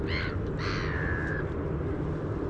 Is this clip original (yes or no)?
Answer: yes